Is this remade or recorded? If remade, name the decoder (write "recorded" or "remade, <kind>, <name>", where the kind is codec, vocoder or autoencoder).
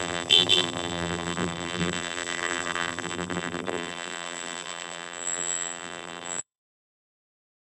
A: remade, vocoder, BigVGAN v2